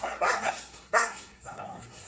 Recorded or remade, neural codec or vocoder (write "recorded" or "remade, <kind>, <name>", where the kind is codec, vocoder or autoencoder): remade, codec, SNAC